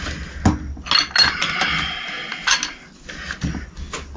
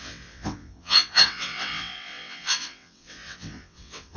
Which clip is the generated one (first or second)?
second